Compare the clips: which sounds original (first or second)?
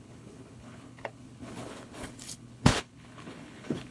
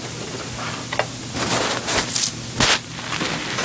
second